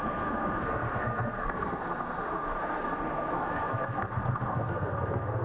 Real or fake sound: fake